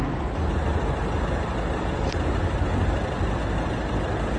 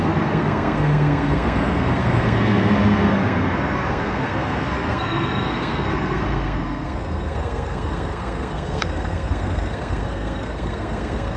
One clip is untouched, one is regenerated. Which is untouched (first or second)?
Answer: first